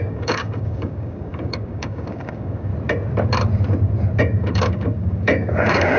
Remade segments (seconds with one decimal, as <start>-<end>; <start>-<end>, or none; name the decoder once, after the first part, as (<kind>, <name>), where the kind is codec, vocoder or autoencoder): 0.0-2.7 (codec, DAC); 4.2-6.0